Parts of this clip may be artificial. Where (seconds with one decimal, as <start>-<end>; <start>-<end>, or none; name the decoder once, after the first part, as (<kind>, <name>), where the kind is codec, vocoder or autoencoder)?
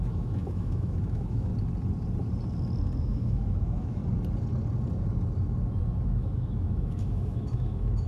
0.0-1.5 (autoencoder, DAC-VAE); 3.0-4.0; 6.0-8.1